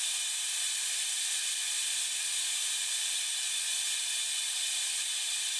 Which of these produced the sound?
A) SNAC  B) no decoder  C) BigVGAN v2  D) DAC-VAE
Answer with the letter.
B